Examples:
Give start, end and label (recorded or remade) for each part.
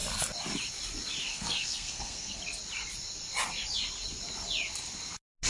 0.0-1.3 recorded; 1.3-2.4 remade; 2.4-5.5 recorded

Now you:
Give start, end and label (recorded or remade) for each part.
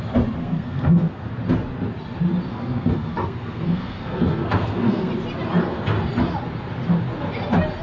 0.0-0.4 recorded; 0.4-1.3 remade; 1.3-2.5 recorded; 2.5-5.1 remade; 5.1-7.8 recorded